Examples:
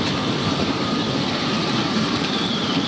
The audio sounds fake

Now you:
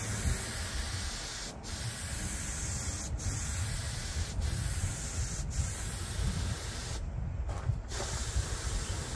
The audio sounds real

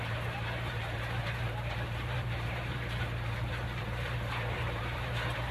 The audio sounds fake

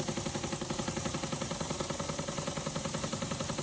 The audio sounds fake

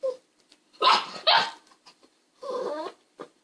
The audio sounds fake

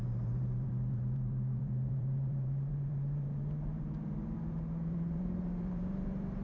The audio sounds fake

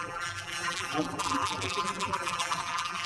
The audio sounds fake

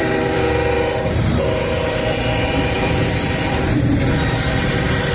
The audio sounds fake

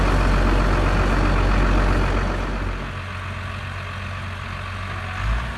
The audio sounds real